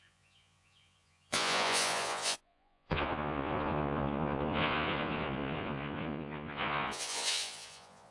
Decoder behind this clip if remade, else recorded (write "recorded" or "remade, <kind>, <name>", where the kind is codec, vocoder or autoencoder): remade, vocoder, Vocos